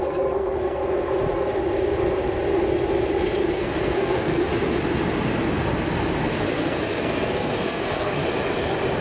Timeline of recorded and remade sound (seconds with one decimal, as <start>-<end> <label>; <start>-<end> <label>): 0.0-0.8 remade; 0.8-3.5 recorded; 3.5-4.5 remade; 4.5-6.4 recorded; 6.4-8.2 remade; 8.2-9.0 recorded